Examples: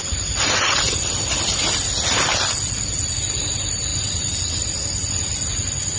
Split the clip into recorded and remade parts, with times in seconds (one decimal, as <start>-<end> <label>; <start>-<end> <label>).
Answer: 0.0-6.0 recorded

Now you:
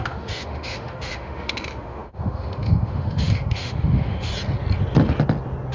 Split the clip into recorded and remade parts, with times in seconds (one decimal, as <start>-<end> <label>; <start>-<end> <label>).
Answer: 0.0-4.3 remade; 4.3-5.7 recorded

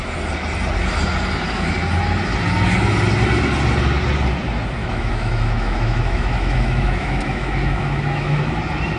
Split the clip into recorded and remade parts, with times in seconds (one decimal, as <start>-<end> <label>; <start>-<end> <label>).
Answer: 0.0-4.8 recorded; 4.8-8.5 remade; 8.5-9.0 recorded

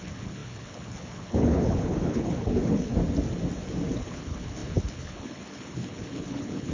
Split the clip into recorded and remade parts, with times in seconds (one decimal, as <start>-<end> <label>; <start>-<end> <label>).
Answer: 0.0-2.9 remade; 2.9-3.9 recorded; 3.9-6.7 remade

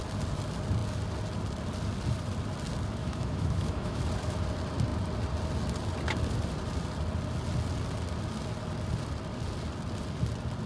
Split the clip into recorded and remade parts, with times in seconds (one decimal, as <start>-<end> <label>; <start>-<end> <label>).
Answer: 0.0-3.0 recorded; 3.0-4.0 remade; 4.0-10.7 recorded

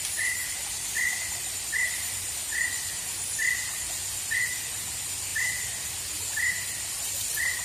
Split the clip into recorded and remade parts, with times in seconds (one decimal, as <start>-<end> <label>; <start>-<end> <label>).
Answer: 0.0-4.0 remade; 4.0-4.6 recorded; 4.6-5.3 remade; 5.3-6.9 recorded; 6.9-7.6 remade